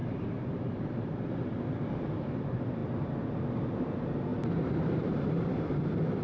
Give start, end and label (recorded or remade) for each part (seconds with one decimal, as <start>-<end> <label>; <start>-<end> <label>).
0.0-1.3 remade; 1.3-4.3 recorded; 4.3-5.8 remade; 5.8-6.2 recorded